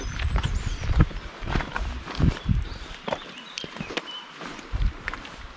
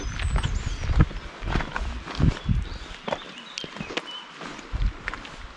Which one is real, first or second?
second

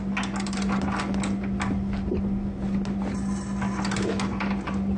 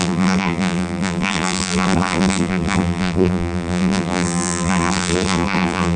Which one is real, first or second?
first